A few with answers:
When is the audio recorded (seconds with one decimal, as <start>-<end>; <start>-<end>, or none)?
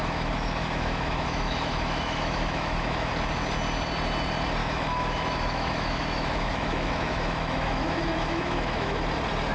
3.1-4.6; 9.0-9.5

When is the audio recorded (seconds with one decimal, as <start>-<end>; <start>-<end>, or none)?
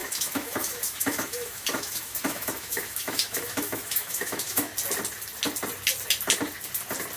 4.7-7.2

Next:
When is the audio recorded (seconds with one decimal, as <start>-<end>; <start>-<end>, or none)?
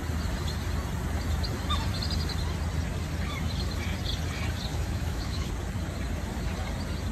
0.0-4.7; 5.5-7.1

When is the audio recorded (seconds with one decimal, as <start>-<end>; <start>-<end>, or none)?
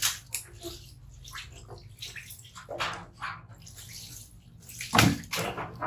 0.0-5.9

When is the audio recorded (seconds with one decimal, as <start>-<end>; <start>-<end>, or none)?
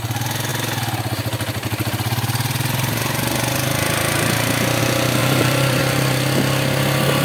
0.0-5.2; 5.8-7.2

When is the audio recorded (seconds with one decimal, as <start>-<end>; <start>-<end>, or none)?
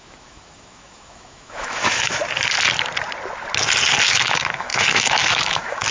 2.2-4.0